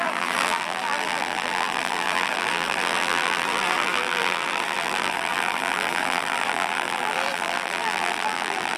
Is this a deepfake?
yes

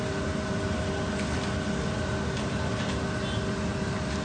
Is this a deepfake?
no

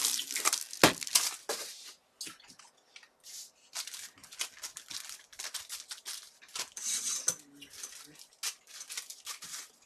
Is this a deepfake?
no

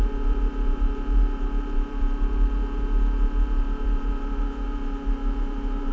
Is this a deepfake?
yes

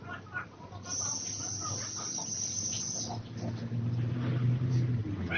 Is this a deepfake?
no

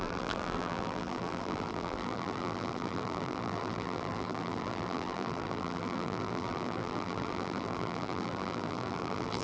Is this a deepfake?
yes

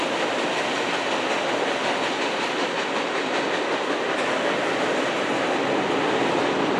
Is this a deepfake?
no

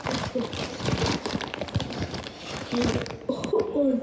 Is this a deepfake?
yes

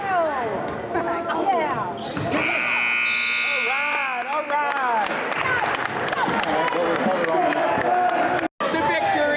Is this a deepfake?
no